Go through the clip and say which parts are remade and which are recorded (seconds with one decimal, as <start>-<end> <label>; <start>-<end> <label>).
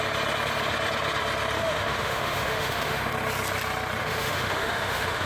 0.0-1.6 recorded; 1.6-3.1 remade; 3.1-4.0 recorded; 4.0-5.3 remade